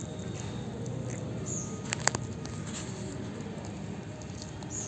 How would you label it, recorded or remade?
recorded